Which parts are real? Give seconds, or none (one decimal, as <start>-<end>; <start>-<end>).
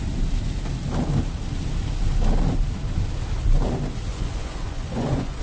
0.0-4.1